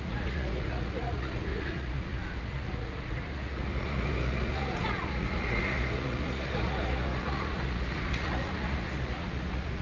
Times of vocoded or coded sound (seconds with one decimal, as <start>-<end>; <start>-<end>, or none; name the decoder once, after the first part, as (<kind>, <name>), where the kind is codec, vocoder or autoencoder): 0.0-9.8 (vocoder, Vocos)